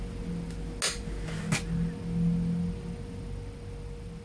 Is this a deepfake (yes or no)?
no